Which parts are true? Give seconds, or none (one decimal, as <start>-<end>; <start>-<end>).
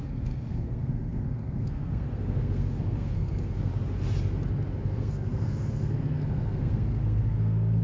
3.7-4.8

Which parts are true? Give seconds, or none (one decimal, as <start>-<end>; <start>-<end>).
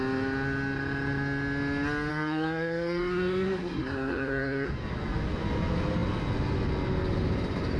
0.0-2.1; 4.7-7.8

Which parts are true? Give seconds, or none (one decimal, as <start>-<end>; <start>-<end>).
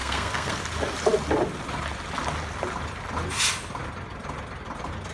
0.6-5.1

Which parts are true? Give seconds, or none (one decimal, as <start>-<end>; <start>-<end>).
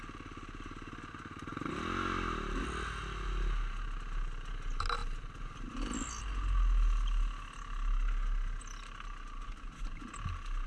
0.0-10.7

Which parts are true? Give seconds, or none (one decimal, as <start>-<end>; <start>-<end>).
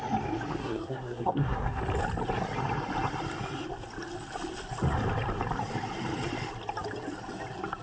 0.0-0.6; 1.8-7.8